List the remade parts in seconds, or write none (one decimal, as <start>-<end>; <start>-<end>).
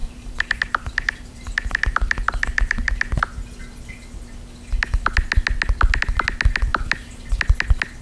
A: 0.0-2.9; 6.7-7.4